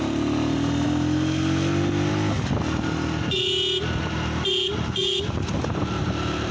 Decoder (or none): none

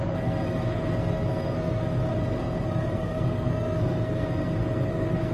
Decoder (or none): codec, SNAC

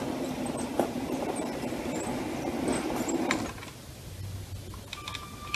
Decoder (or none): none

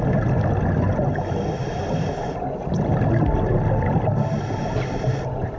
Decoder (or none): none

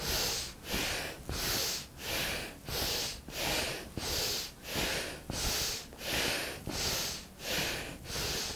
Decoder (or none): none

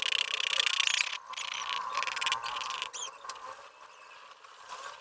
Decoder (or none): none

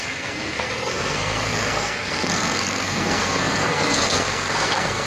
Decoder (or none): codec, SNAC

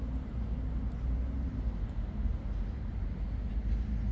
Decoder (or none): none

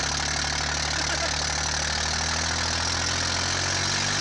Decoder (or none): none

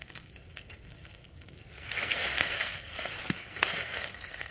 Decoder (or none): codec, SNAC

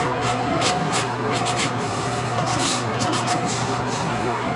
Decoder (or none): codec, SNAC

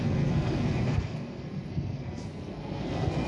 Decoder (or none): codec, SNAC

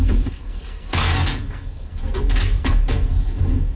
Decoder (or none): codec, SNAC